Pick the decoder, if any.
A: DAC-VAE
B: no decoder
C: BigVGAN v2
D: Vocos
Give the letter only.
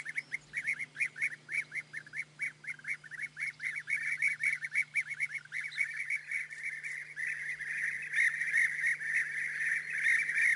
B